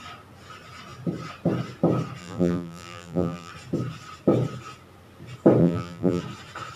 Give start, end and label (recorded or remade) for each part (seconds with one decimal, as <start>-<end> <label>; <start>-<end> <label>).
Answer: 0.0-2.2 recorded; 2.2-3.5 remade; 3.5-5.6 recorded; 5.6-6.2 remade; 6.2-6.8 recorded